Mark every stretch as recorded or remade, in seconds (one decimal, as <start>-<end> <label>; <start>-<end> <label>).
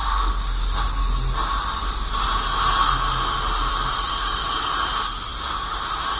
0.0-6.2 recorded